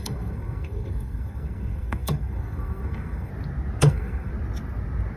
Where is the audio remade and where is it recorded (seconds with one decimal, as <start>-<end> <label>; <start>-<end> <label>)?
0.0-3.3 remade; 3.3-3.8 recorded; 3.8-4.3 remade; 4.3-5.2 recorded